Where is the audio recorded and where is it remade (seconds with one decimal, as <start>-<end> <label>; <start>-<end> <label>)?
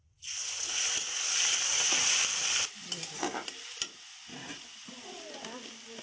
0.0-0.4 recorded; 0.4-1.2 remade; 1.2-1.7 recorded; 1.7-2.2 remade; 2.2-4.3 recorded; 4.3-5.2 remade; 5.2-6.0 recorded